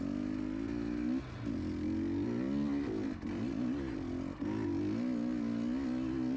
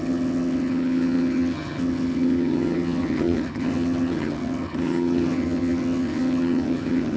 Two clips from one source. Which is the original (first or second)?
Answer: first